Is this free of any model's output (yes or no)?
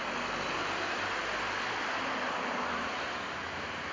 yes